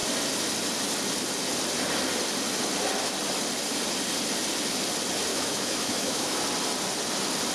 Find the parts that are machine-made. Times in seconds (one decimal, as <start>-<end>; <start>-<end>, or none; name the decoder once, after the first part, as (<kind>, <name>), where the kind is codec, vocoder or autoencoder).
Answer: 5.3-6.4 (autoencoder, DAC-VAE)